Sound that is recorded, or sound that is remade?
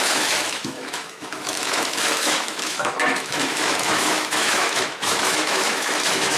remade